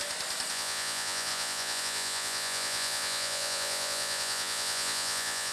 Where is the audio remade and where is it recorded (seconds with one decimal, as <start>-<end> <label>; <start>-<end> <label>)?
0.0-0.5 recorded; 0.5-5.5 remade